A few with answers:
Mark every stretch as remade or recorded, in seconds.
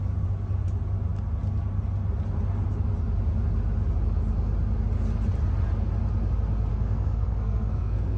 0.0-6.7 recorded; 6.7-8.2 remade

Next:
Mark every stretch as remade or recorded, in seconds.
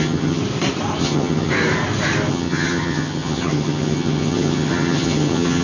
0.0-0.4 remade; 0.4-1.0 recorded; 1.0-1.5 remade; 1.5-2.3 recorded; 2.3-5.6 remade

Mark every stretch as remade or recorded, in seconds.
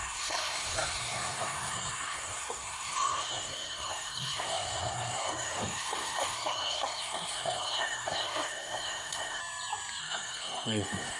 0.0-9.4 remade; 9.4-10.0 recorded; 10.0-11.2 remade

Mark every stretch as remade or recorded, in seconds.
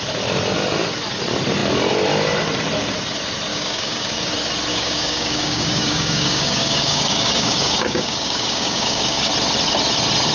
0.0-3.5 recorded; 3.5-4.3 remade; 4.3-4.7 recorded; 4.7-9.3 remade; 9.3-10.3 recorded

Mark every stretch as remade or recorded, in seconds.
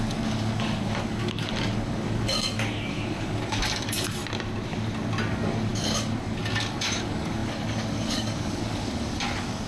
0.0-4.2 remade; 4.2-5.3 recorded; 5.3-9.7 remade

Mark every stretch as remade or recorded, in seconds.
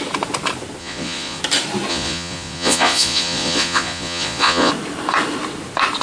0.0-0.8 recorded; 0.8-1.4 remade; 1.4-1.9 recorded; 1.9-4.7 remade; 4.7-6.0 recorded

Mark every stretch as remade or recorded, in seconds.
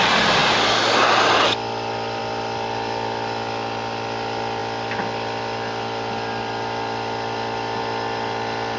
0.0-8.8 recorded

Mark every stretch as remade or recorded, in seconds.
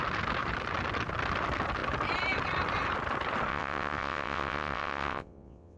0.0-3.5 recorded; 3.5-5.8 remade